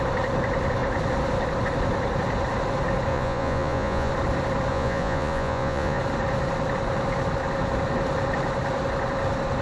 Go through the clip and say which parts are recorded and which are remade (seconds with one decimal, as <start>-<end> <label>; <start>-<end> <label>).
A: 0.0-3.1 recorded; 3.1-4.1 remade; 4.1-4.7 recorded; 4.7-6.0 remade; 6.0-9.6 recorded